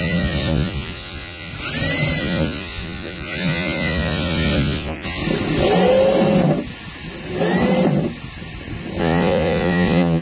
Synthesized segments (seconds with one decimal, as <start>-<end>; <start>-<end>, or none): 0.0-1.5; 2.2-5.2; 9.0-10.2